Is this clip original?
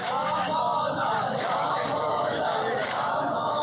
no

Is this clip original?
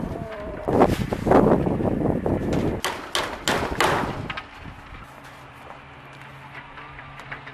yes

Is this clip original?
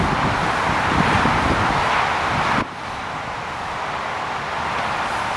yes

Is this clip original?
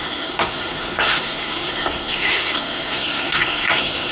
no